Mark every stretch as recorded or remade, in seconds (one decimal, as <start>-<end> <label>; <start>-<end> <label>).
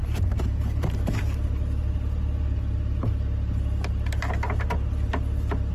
0.0-1.2 remade; 1.2-5.7 recorded